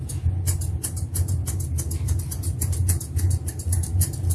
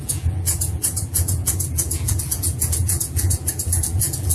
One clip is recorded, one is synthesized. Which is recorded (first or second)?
first